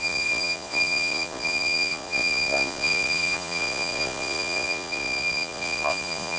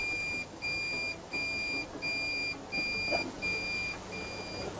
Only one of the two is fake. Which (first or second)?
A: first